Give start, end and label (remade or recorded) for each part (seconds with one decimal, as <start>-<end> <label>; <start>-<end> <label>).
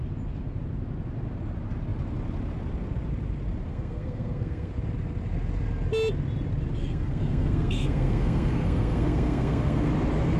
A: 0.0-3.7 recorded; 3.7-4.7 remade; 4.7-6.8 recorded; 6.8-9.9 remade; 9.9-10.4 recorded